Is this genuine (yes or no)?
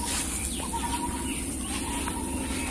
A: yes